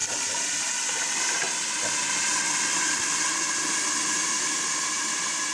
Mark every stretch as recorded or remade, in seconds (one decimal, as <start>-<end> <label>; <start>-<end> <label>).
0.0-5.5 recorded